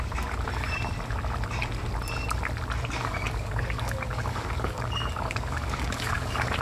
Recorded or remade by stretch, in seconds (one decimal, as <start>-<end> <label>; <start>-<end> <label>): 0.0-3.0 recorded; 3.0-6.6 remade